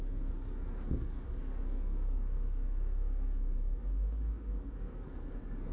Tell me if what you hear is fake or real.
fake